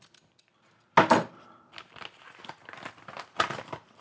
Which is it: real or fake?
real